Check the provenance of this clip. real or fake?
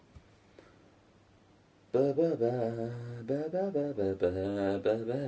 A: real